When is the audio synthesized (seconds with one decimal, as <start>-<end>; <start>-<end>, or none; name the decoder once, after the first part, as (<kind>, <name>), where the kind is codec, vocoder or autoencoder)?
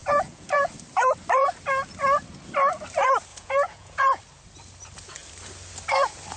0.0-0.7 (vocoder, Vocos); 3.3-4.2